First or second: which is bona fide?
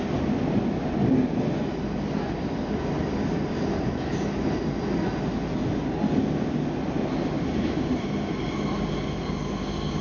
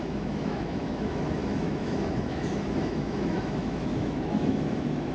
first